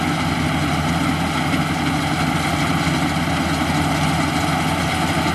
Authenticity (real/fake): real